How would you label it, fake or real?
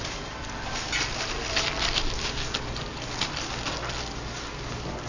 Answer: real